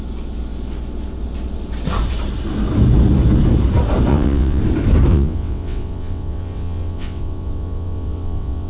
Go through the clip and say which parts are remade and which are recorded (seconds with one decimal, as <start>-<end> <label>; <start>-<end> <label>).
0.0-4.1 recorded; 4.1-4.6 remade; 4.6-5.1 recorded; 5.1-8.7 remade